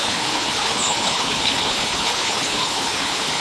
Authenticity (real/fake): fake